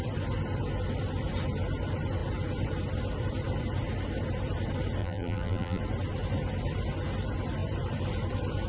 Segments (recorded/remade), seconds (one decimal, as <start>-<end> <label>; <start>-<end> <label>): 0.0-5.0 recorded; 5.0-5.8 remade; 5.8-8.7 recorded